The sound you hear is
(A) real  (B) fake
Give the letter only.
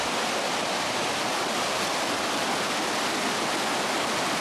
A